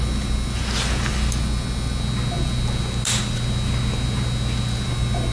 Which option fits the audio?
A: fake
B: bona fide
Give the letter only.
B